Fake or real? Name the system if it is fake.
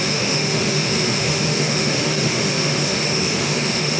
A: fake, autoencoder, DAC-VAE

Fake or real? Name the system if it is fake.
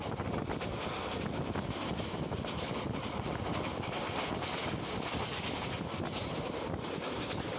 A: real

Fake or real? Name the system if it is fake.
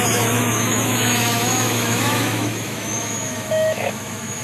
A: fake, autoencoder, DAC-VAE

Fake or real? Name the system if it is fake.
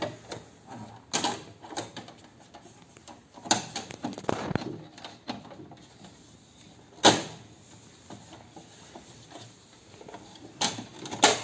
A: real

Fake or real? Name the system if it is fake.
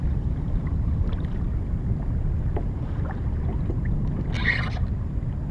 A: real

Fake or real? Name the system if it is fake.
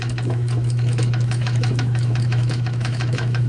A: fake, autoencoder, DAC-VAE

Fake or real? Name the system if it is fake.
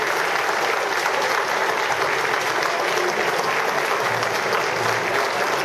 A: real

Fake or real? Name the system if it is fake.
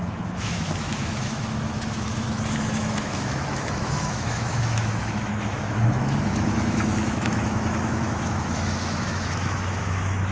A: fake, autoencoder, DAC-VAE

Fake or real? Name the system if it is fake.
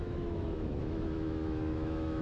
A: fake, autoencoder, DAC-VAE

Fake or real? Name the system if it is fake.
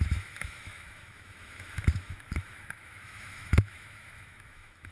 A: fake, autoencoder, DAC-VAE